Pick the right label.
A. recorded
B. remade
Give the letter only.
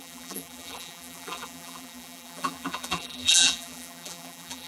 B